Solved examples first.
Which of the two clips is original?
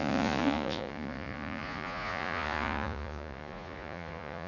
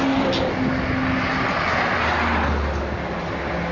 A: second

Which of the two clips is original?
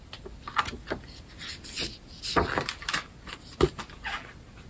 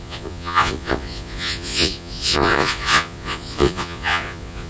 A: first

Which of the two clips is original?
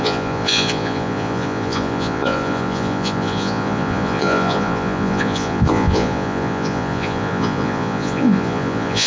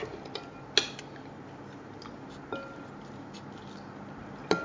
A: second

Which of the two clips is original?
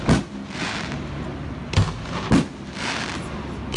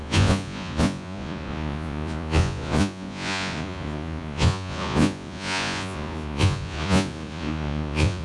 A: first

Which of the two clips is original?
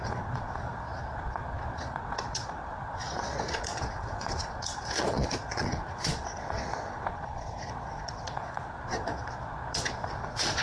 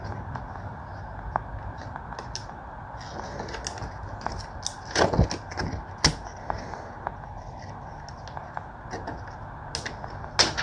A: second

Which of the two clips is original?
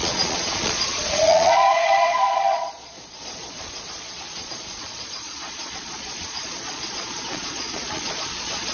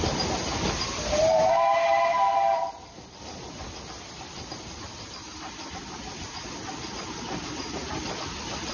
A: second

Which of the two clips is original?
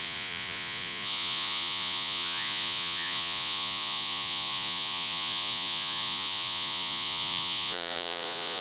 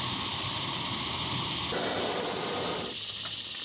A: second